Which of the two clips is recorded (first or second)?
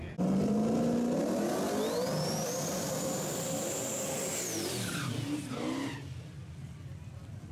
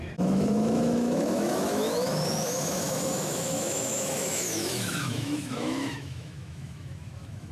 first